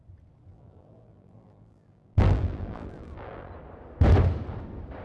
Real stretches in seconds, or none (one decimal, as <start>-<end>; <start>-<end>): 0.0-0.5; 3.5-5.0